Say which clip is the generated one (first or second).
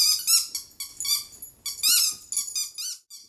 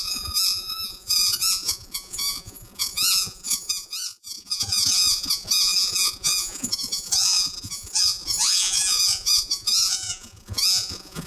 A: second